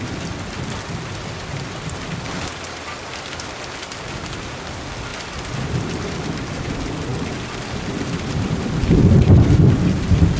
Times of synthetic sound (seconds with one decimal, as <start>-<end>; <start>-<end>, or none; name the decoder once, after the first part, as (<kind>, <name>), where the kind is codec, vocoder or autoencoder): 0.0-10.4 (vocoder, BigVGAN v2)